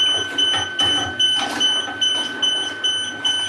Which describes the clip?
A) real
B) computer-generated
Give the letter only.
A